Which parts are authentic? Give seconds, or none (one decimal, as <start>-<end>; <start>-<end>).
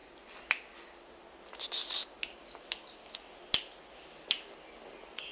0.0-5.3